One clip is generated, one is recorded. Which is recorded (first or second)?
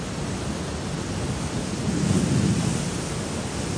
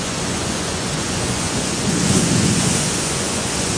first